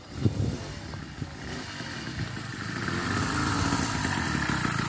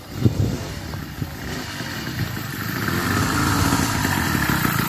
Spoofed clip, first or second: second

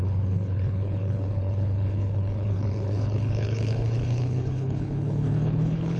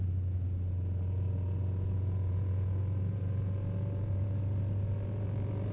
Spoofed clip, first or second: first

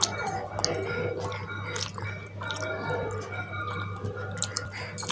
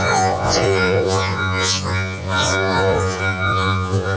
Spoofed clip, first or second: second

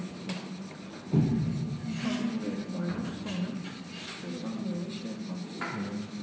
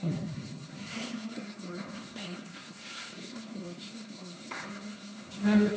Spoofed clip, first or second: second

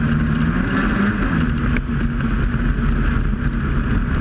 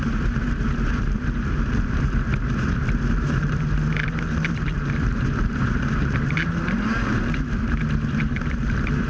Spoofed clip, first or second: second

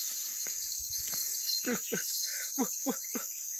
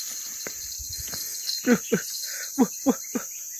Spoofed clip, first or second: first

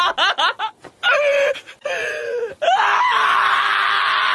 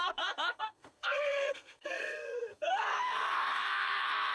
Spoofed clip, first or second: second